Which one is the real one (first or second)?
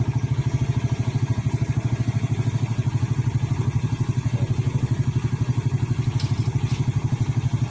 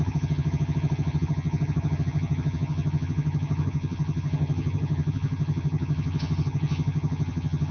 first